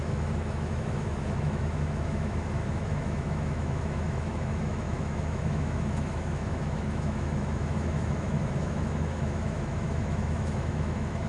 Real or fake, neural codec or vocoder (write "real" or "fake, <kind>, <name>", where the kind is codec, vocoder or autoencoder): fake, autoencoder, DAC-VAE